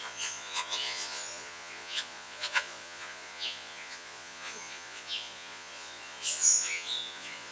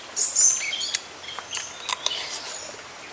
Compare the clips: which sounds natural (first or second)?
second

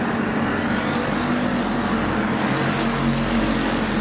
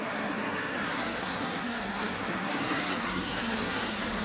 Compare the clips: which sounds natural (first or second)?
first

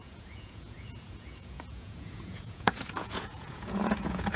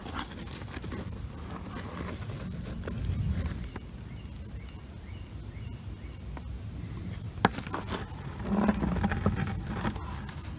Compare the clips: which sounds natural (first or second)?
second